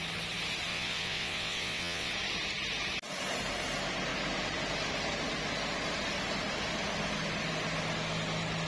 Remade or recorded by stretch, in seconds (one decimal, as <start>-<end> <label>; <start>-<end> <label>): 0.0-0.7 recorded; 0.7-2.1 remade; 2.1-8.7 recorded